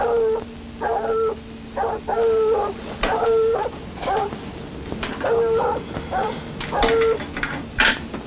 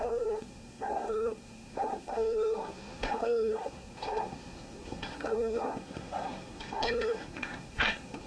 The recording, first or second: first